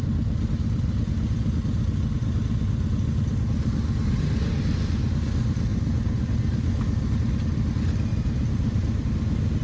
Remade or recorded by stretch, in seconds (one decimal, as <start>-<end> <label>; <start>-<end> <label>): 0.0-5.7 recorded; 5.7-7.2 remade; 7.2-8.1 recorded; 8.1-9.1 remade; 9.1-9.6 recorded